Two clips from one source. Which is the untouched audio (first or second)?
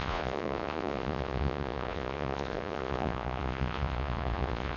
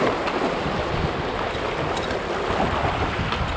second